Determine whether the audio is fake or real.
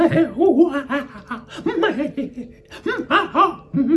fake